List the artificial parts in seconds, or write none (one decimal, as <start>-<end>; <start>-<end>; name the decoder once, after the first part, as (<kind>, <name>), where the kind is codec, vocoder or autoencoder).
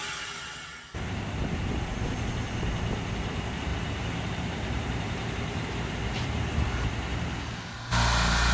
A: 3.7-6.4 (vocoder, BigVGAN v2)